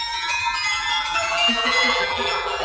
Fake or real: fake